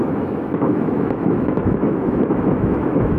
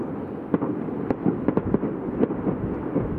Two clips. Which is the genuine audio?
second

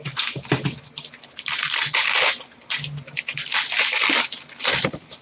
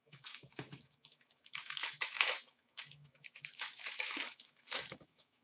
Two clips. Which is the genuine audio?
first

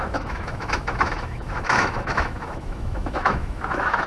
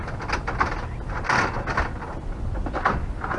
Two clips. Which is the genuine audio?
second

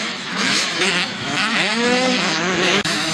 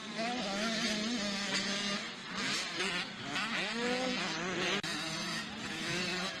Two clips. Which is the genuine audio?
second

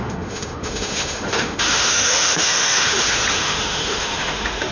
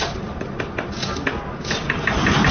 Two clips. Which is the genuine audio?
second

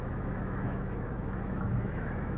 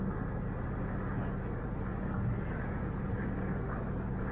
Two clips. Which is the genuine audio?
second